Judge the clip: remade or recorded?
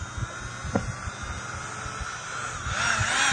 recorded